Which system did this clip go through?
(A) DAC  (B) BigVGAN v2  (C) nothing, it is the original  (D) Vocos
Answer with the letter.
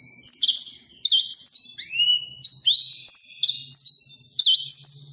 C